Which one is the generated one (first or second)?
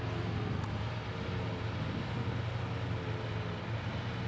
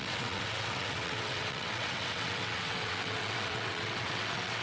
second